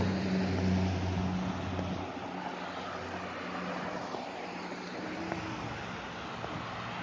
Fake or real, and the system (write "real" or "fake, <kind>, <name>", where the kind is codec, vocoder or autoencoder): real